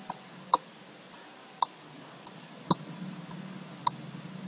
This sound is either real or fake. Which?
real